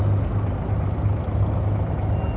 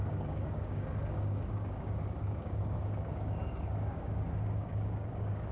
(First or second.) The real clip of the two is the first